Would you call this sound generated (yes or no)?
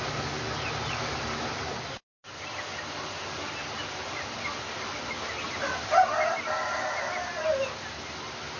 no